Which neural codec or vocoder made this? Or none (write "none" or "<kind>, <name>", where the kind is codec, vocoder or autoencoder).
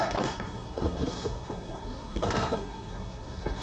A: codec, SNAC